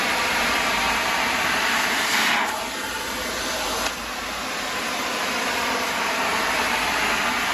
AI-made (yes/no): yes